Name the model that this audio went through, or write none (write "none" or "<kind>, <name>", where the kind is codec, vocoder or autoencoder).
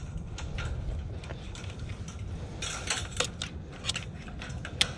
none